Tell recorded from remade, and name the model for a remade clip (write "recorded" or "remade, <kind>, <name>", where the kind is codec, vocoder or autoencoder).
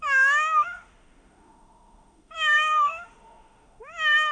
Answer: remade, autoencoder, DAC-VAE